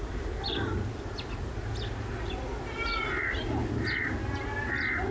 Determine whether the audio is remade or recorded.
recorded